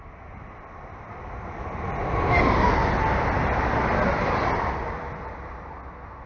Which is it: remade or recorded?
recorded